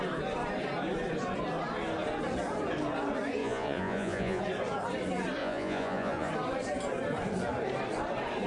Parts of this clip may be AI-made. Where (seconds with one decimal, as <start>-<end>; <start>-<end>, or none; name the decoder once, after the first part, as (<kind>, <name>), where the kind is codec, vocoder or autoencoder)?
3.4-4.4 (vocoder, Vocos); 5.4-6.3